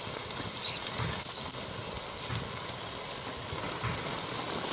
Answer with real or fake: real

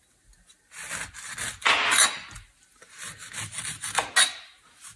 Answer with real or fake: real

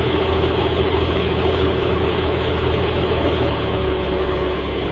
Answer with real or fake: fake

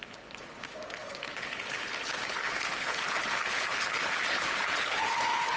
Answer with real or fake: fake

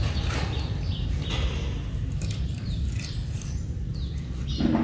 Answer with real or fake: real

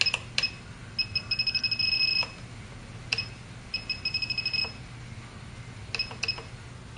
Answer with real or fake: real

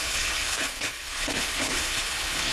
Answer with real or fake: fake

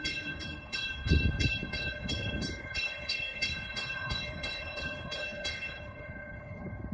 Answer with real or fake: fake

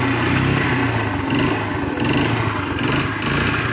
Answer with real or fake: real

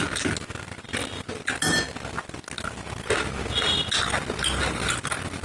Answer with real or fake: real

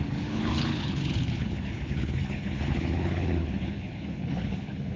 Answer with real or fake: fake